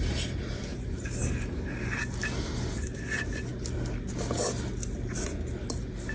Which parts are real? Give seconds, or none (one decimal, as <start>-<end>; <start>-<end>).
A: 0.0-0.7; 3.0-6.1